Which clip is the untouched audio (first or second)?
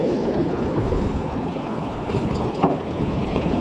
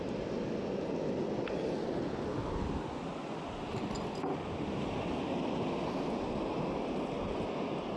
second